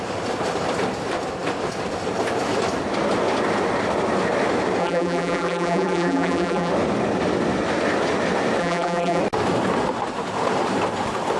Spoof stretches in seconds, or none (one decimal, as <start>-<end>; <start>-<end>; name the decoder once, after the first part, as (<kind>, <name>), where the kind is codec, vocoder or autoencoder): 4.8-6.7 (vocoder, BigVGAN v2); 8.6-9.2